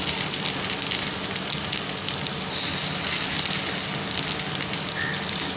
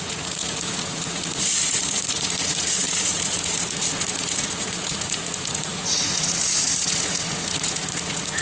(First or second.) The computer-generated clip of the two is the second